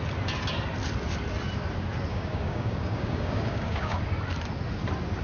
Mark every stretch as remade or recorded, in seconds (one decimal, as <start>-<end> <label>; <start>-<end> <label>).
0.0-2.1 recorded; 2.1-4.0 remade; 4.0-5.2 recorded